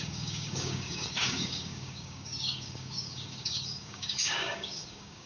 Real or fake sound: fake